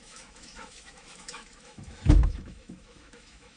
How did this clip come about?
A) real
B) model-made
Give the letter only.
B